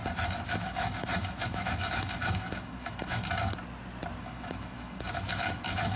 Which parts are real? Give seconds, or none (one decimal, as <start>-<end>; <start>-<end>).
0.0-0.6; 3.2-4.2